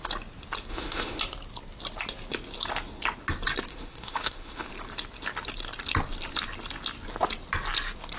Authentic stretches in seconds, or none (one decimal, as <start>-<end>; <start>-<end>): 0.0-0.7; 1.2-3.7; 4.7-8.2